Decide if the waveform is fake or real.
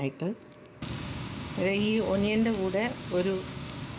fake